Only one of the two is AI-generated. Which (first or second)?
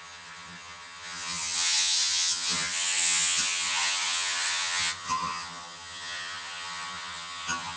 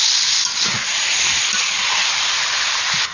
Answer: first